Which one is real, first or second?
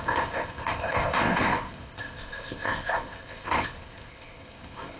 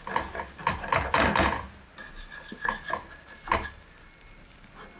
second